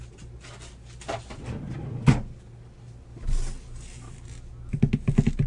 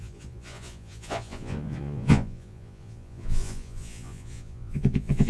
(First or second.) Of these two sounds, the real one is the first